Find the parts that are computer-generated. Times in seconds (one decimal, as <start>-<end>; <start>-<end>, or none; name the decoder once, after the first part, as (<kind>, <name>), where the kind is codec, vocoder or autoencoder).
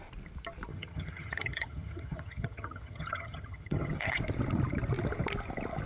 0.7-4.2 (vocoder, HiFi-GAN)